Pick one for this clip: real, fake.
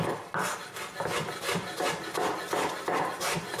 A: real